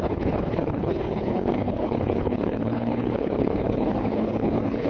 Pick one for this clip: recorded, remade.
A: remade